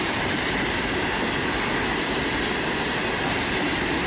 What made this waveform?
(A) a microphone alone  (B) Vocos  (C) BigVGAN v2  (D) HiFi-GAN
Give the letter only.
A